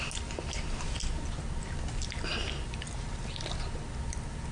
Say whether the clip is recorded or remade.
recorded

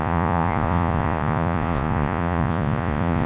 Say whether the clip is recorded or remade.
remade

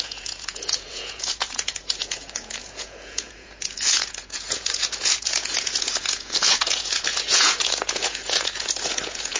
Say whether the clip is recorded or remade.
remade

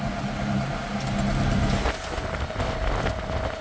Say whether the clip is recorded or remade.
recorded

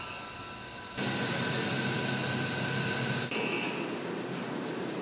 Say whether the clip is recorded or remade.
recorded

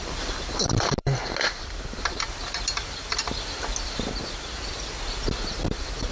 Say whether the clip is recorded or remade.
recorded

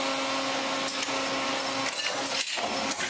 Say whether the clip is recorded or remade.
recorded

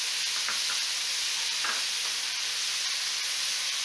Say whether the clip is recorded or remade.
recorded